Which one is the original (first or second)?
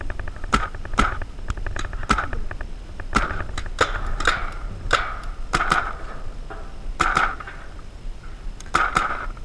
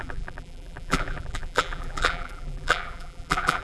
first